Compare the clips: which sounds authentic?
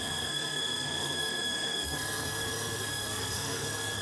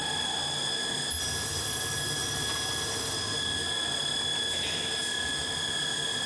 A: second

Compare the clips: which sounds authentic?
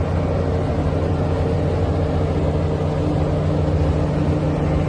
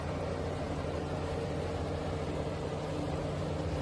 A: first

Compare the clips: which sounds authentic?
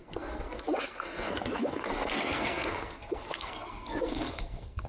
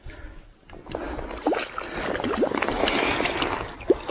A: second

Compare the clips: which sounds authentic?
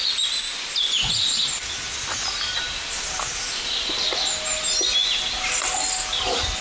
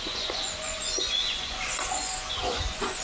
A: first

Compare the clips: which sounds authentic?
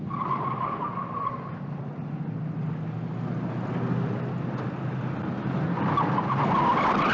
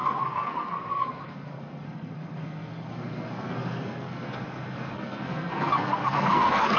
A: first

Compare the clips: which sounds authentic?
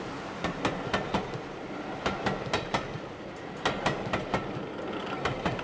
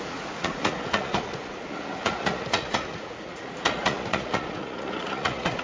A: first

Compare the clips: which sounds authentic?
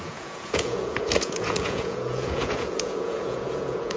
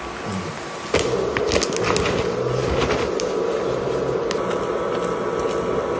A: second